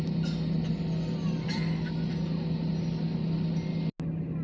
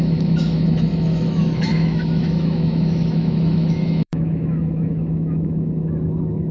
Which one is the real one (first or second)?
first